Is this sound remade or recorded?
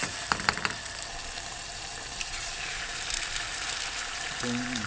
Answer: remade